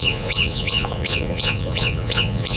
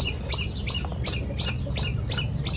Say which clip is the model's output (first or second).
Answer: first